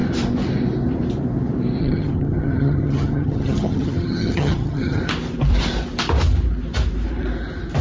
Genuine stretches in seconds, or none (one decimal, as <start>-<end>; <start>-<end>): 0.0-1.8; 5.0-7.8